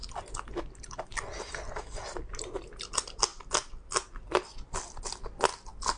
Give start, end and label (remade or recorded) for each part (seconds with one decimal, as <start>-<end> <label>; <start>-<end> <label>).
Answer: 0.0-6.0 recorded

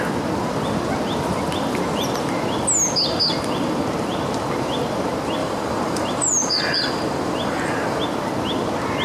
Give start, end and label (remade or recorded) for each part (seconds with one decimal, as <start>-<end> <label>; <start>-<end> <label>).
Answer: 0.0-5.4 recorded; 5.4-8.0 remade; 8.0-9.0 recorded

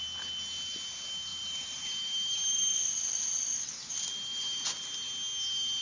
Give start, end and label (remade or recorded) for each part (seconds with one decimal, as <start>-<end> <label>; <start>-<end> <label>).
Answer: 0.0-1.3 recorded; 1.3-4.8 remade; 4.8-5.8 recorded

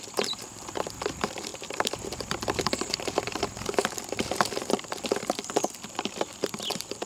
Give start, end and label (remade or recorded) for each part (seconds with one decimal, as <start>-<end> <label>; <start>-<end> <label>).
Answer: 0.0-7.1 remade

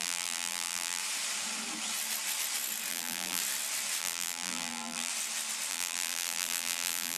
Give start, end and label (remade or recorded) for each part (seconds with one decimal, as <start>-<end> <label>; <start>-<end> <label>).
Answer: 0.0-1.0 remade; 1.0-2.9 recorded; 2.9-3.4 remade; 3.4-4.0 recorded; 4.0-5.1 remade; 5.1-5.7 recorded; 5.7-7.2 remade